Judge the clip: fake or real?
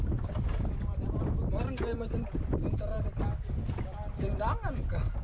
real